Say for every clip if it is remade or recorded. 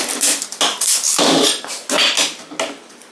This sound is recorded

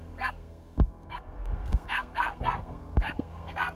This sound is remade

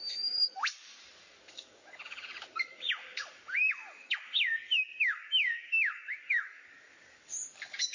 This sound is remade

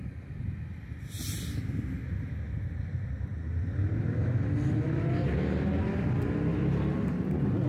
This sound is recorded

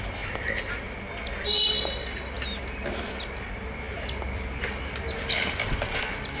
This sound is recorded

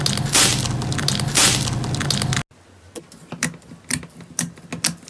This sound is recorded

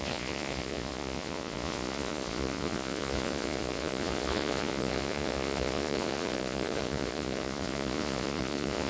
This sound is remade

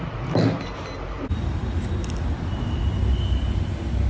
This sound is recorded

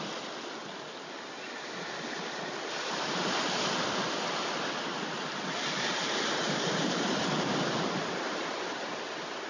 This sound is recorded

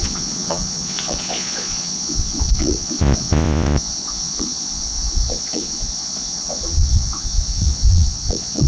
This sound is remade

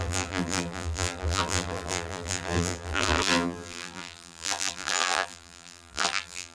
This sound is remade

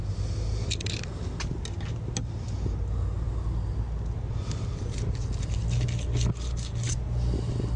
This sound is recorded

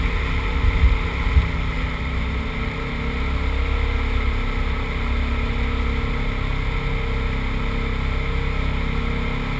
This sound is recorded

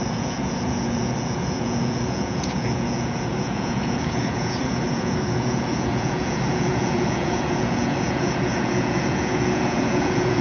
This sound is remade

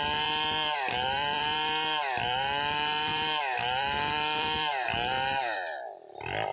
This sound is remade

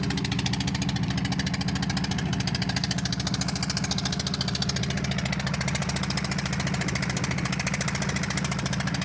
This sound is recorded